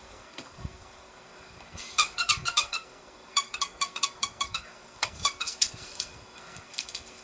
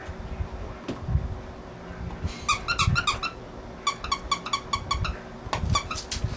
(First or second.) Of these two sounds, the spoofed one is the first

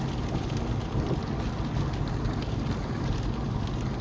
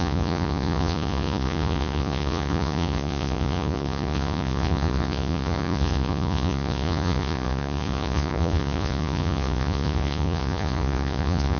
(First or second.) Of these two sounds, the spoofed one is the second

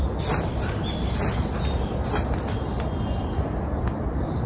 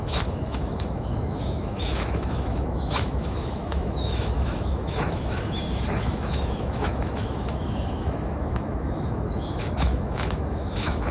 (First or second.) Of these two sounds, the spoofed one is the second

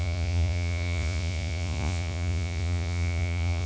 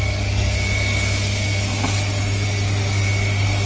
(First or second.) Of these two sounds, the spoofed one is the first